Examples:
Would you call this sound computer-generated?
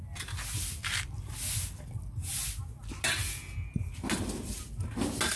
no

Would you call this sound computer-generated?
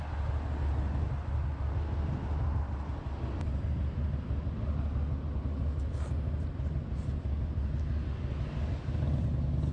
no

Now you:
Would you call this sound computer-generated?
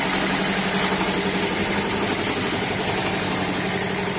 no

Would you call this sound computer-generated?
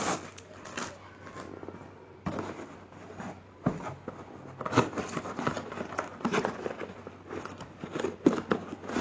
no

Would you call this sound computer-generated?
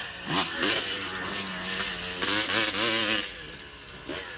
no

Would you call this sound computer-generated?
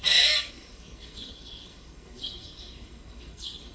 yes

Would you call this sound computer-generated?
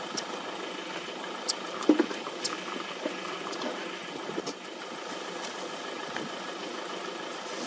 no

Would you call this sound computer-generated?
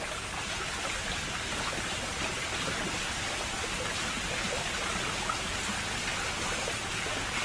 no